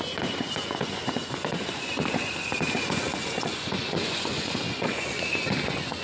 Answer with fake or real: fake